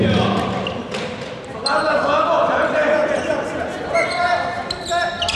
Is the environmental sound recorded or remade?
recorded